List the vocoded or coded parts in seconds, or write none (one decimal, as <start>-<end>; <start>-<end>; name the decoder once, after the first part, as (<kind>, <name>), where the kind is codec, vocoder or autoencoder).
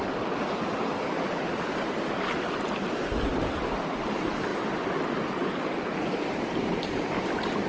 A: none